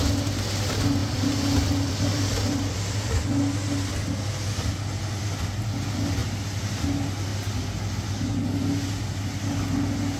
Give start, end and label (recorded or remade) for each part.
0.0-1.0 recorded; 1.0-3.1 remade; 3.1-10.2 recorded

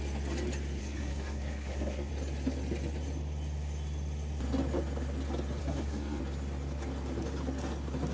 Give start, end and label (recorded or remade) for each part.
0.0-0.8 recorded; 0.8-2.1 remade; 2.1-5.6 recorded; 5.6-6.2 remade; 6.2-8.1 recorded

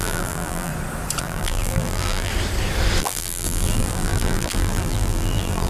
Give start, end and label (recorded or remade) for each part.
0.0-0.7 remade; 0.7-1.2 recorded; 1.2-2.3 remade; 2.3-3.0 recorded; 3.0-5.7 remade

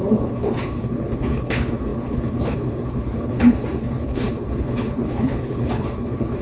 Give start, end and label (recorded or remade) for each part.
0.0-6.4 remade